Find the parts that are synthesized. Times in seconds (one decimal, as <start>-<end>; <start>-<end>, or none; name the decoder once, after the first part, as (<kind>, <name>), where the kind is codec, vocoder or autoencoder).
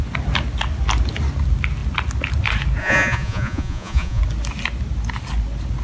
2.8-4.2 (vocoder, Vocos)